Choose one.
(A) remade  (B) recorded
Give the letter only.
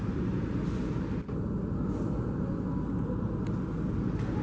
B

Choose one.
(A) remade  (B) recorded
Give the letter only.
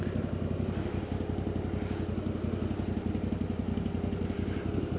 B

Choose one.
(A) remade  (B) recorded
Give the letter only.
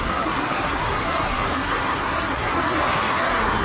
A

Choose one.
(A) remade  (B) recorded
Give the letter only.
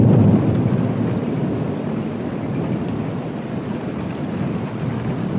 B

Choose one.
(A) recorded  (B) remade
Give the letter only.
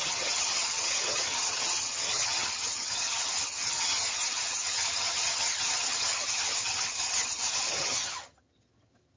B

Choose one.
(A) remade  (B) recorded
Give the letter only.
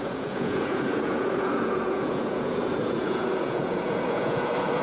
A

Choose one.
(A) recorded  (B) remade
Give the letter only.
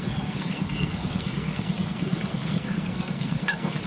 B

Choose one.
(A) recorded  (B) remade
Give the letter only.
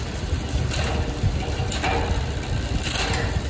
A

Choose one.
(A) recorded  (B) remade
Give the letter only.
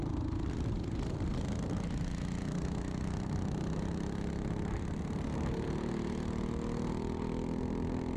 A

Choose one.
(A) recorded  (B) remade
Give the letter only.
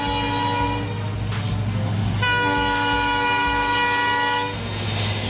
A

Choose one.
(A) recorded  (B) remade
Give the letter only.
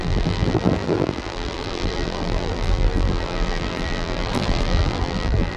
B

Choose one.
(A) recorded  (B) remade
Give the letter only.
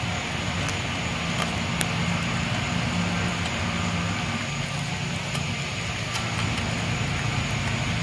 A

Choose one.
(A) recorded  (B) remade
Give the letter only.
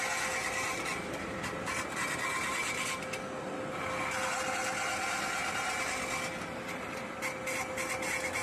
A